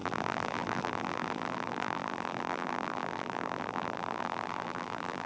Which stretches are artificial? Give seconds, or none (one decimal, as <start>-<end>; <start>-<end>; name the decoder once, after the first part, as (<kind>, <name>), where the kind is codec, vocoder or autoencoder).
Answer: 0.0-5.3 (vocoder, BigVGAN v2)